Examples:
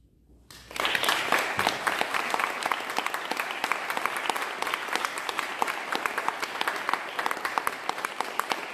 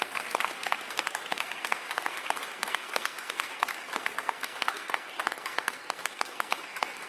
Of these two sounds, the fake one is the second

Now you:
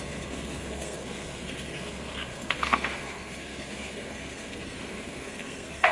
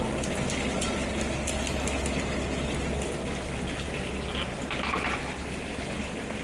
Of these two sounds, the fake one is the first